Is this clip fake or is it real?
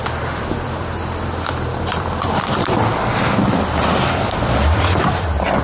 fake